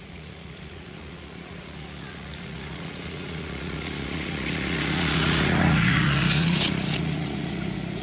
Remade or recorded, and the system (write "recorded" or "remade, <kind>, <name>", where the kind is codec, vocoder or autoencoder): remade, vocoder, Vocos